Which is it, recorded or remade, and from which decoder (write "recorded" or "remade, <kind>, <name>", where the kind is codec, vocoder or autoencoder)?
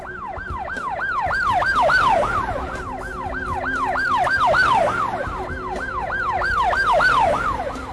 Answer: recorded